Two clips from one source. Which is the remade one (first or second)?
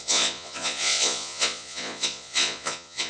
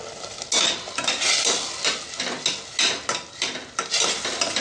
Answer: first